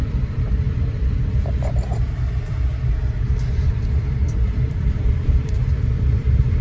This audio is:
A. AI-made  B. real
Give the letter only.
A